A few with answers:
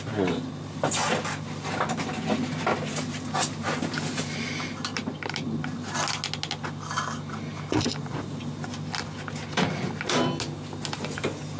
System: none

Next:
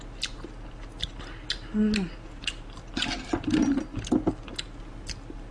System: none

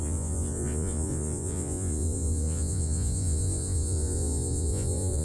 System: vocoder, Vocos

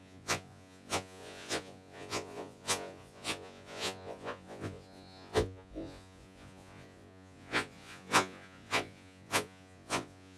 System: vocoder, Vocos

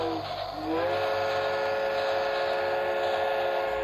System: none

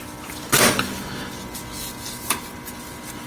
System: none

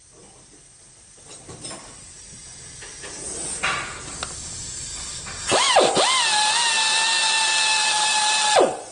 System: none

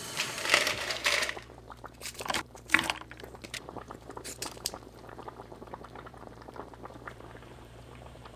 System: vocoder, BigVGAN v2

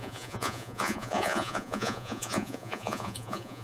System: vocoder, Vocos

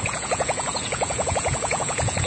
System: vocoder, Vocos